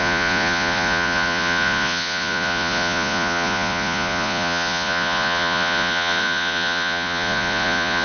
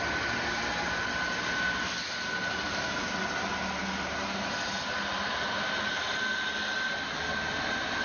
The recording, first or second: second